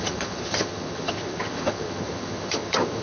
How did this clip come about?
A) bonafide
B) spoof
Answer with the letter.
B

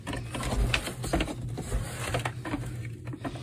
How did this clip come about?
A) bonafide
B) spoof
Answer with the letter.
A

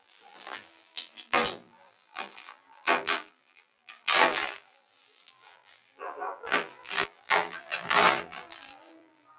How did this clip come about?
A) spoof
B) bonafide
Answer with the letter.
A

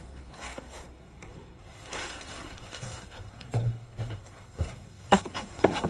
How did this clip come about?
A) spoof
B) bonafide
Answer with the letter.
A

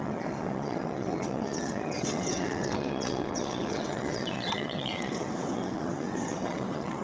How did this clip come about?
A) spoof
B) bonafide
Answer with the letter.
A